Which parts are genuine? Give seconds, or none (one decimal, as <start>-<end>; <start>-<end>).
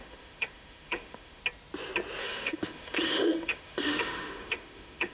1.4-2.2